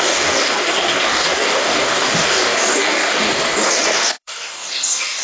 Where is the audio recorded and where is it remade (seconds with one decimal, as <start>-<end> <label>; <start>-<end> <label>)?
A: 0.0-5.2 remade